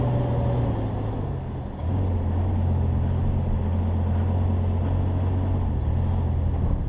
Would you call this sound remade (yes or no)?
no